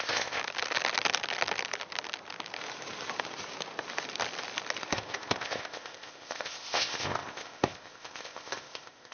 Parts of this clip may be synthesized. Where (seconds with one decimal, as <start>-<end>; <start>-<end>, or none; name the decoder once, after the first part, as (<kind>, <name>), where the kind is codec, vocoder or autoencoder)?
0.0-0.4 (codec, ZipCodec); 4.9-9.1